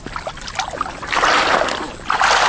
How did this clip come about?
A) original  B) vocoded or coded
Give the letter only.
A